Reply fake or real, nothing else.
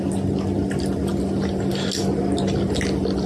real